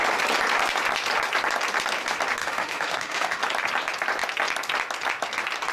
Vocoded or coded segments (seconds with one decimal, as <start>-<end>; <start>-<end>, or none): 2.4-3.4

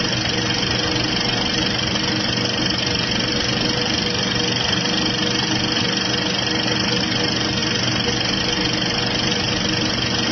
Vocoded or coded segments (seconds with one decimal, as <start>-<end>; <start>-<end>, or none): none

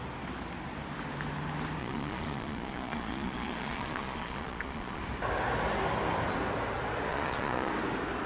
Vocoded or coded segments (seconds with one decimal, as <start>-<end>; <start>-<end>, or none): 1.8-5.0; 7.1-7.7

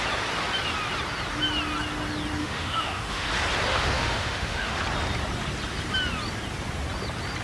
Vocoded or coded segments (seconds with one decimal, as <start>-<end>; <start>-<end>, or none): 2.4-3.3; 3.7-4.8

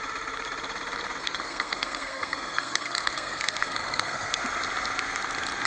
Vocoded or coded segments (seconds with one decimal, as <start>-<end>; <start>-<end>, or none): 1.2-4.4